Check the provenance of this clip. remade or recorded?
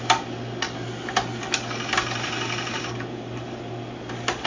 recorded